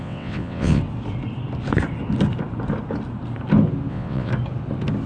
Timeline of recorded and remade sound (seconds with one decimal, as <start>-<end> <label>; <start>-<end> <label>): 0.0-0.8 remade; 0.8-3.9 recorded; 3.9-4.3 remade; 4.3-5.1 recorded